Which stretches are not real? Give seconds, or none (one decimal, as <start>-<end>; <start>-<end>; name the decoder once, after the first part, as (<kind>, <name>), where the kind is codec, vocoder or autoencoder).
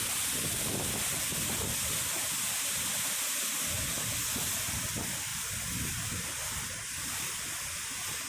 5.3-7.4 (vocoder, BigVGAN v2)